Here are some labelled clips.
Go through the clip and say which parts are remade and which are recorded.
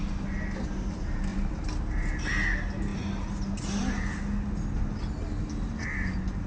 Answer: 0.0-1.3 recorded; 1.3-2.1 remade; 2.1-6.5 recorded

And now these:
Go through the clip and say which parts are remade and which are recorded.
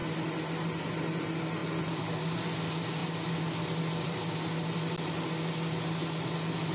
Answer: 0.0-6.7 recorded